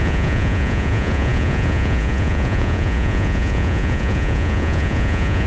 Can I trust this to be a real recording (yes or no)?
no